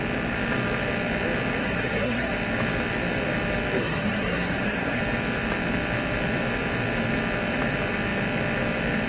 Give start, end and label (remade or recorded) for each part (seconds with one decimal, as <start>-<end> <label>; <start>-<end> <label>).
0.0-1.6 recorded; 1.6-2.3 remade; 2.3-3.8 recorded; 3.8-5.0 remade; 5.0-9.1 recorded